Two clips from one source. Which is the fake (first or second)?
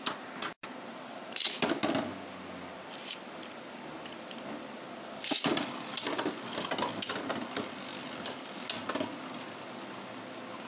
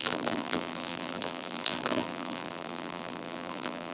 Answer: second